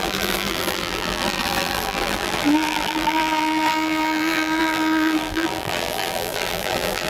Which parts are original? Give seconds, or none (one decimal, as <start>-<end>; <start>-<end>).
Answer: none